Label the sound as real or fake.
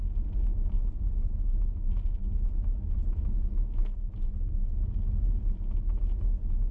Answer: real